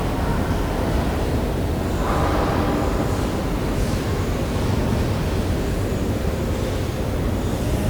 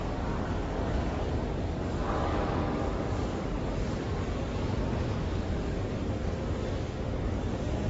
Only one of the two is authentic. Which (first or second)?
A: first